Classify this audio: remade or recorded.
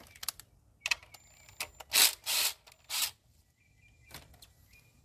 recorded